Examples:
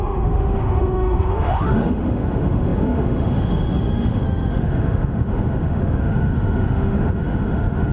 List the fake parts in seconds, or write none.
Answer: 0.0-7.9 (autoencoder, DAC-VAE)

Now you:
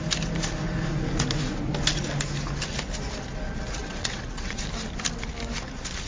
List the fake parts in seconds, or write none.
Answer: 3.8-4.6 (vocoder, WaveNeXt)

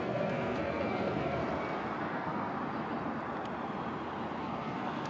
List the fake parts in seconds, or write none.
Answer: 0.0-1.4 (codec, SNAC); 2.0-2.5; 4.4-5.1

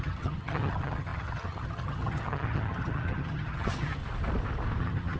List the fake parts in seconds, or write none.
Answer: 0.0-4.0 (vocoder, HiFi-GAN); 4.8-5.2

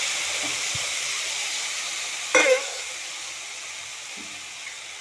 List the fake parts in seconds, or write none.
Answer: 2.4-2.9 (codec, SNAC)

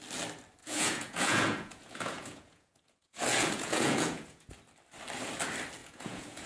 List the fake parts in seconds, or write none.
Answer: 0.6-4.5 (vocoder, Vocos); 5.8-6.5

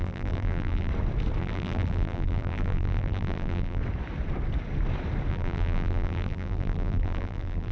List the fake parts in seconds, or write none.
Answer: 0.0-0.9 (vocoder, BigVGAN v2); 1.4-3.8; 5.3-7.7

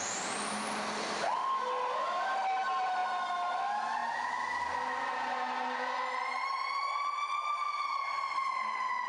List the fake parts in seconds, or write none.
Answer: none